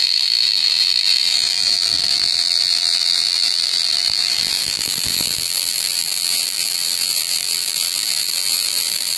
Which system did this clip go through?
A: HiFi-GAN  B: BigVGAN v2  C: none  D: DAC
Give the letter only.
B